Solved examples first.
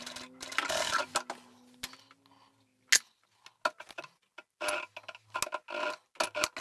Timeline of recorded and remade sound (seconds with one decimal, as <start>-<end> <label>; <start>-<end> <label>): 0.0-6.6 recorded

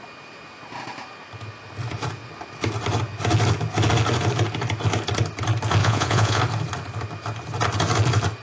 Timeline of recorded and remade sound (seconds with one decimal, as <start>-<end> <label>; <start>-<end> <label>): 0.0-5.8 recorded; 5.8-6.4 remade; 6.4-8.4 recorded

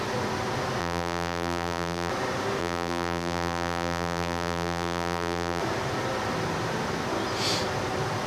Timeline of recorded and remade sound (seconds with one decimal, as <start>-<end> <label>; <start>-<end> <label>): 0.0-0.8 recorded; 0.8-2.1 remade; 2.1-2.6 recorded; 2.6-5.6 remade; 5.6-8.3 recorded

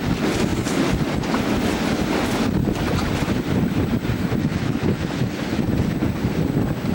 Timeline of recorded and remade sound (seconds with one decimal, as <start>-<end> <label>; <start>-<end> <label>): 0.0-4.4 recorded; 4.4-5.3 remade; 5.3-6.9 recorded

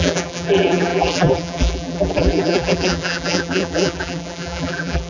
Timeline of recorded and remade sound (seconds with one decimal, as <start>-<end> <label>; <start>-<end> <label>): 0.0-5.1 remade

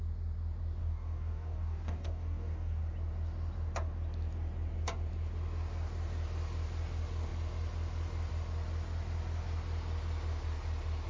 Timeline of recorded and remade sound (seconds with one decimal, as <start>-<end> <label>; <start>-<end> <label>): 0.0-0.8 recorded; 0.8-2.8 remade; 2.8-11.1 recorded